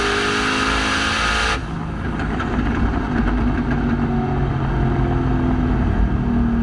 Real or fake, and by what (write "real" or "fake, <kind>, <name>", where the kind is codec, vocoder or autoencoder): real